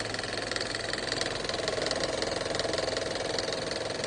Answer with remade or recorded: recorded